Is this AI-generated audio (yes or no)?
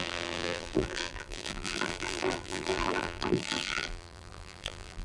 yes